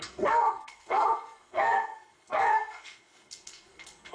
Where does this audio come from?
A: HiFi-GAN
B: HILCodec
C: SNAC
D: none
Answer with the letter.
C